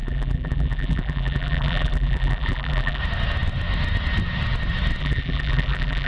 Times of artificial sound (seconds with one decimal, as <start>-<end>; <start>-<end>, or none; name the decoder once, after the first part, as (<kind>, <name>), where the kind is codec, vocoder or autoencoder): 0.0-3.0 (vocoder, BigVGAN v2); 5.0-6.1

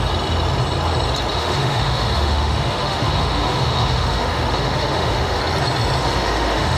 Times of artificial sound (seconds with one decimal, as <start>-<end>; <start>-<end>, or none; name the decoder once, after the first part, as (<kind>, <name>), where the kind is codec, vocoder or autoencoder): 1.3-5.4 (autoencoder, DAC-VAE); 6.0-6.8

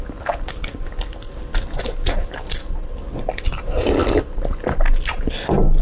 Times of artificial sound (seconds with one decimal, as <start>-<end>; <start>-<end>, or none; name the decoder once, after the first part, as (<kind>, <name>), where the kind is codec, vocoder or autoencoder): none